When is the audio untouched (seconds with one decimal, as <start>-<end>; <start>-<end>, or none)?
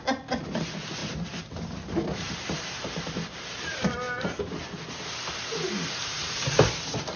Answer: 0.0-1.0; 4.9-6.0; 6.5-7.2